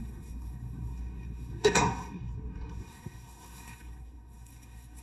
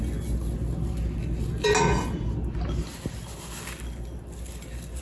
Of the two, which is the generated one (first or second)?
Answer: first